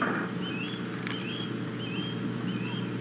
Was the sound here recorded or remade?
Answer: recorded